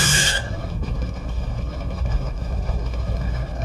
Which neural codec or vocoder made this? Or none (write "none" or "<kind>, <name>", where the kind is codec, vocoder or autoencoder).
codec, SNAC